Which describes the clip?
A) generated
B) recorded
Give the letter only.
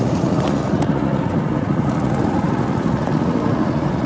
A